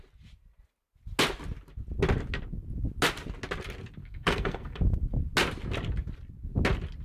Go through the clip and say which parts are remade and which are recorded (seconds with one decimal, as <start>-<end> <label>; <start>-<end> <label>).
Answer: 0.0-4.0 recorded; 4.0-4.8 remade; 4.8-7.0 recorded